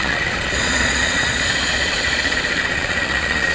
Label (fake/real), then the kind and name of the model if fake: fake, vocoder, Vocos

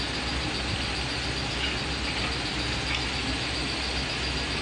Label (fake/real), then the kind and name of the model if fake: real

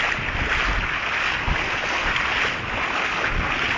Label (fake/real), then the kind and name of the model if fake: real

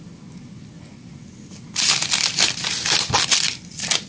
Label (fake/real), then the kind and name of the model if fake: real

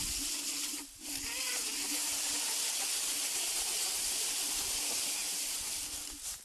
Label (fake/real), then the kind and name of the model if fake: real